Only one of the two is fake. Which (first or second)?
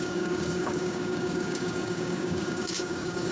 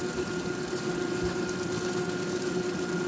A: first